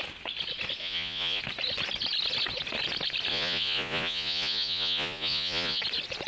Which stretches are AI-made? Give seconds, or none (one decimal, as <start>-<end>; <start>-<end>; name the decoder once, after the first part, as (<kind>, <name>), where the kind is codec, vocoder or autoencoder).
0.8-1.4 (vocoder, Vocos); 3.3-5.8

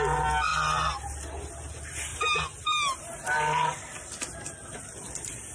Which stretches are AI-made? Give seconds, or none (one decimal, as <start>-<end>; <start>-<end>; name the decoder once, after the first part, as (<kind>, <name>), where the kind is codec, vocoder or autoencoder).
none